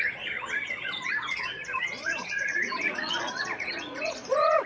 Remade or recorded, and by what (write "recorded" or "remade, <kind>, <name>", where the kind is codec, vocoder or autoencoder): remade, vocoder, Vocos